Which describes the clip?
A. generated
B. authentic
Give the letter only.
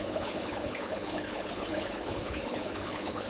A